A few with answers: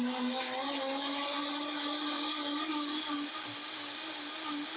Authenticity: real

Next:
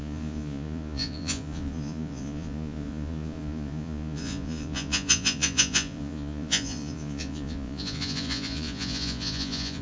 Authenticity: fake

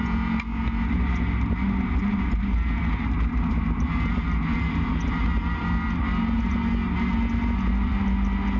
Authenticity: real